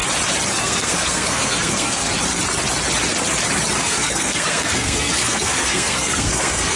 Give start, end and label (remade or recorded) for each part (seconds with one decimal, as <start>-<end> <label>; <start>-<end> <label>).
0.0-0.6 recorded; 0.6-2.1 remade; 2.1-3.8 recorded; 3.8-6.8 remade